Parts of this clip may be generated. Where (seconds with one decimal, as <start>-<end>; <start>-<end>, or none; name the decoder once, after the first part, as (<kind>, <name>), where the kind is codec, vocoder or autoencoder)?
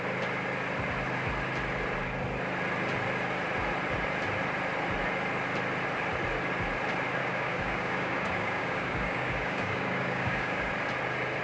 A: 7.2-10.7 (codec, DAC)